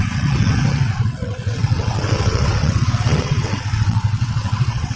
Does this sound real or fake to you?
fake